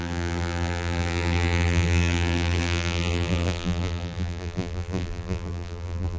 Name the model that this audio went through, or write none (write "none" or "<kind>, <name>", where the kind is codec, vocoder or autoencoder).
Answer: vocoder, BigVGAN v2